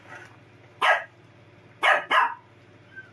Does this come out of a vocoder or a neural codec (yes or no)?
no